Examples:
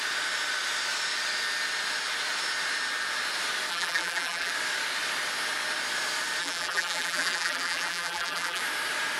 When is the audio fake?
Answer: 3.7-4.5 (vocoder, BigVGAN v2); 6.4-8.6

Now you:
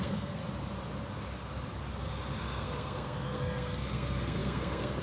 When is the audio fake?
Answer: 0.0-0.4 (codec, SNAC); 2.4-5.0

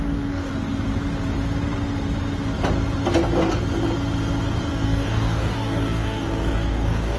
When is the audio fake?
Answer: 0.0-0.5 (codec, DAC); 4.7-7.2

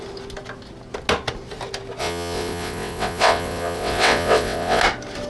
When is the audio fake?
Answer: 2.0-4.8 (vocoder, WaveNeXt)

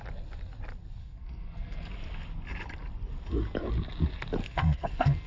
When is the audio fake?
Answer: 1.0-1.9 (codec, SNAC); 4.4-5.3

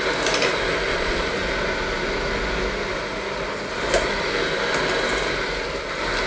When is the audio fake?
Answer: 0.9-1.5 (vocoder, Vocos)